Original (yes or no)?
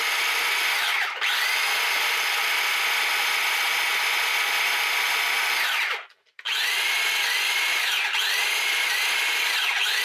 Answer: yes